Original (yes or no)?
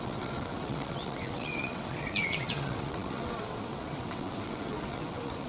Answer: no